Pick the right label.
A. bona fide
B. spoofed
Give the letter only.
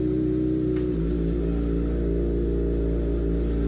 A